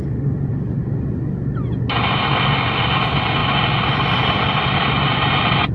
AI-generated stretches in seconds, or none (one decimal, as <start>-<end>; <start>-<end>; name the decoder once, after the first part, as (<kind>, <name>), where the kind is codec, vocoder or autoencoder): 3.4-4.6 (vocoder, BigVGAN v2)